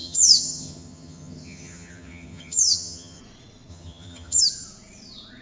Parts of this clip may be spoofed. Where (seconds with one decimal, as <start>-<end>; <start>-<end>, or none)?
0.0-3.2; 3.7-4.4